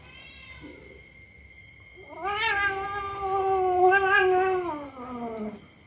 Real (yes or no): no